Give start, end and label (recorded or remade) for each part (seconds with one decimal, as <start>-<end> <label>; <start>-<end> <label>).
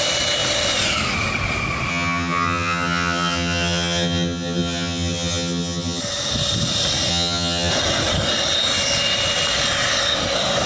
0.0-1.9 recorded; 1.9-6.0 remade; 6.0-7.1 recorded; 7.1-7.7 remade; 7.7-10.7 recorded